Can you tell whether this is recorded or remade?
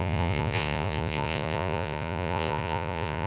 remade